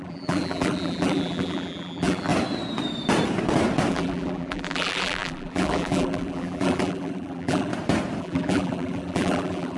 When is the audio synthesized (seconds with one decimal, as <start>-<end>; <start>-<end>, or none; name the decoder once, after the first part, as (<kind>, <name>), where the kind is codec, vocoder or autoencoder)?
0.0-2.3 (vocoder, BigVGAN v2); 3.9-7.7; 8.2-9.8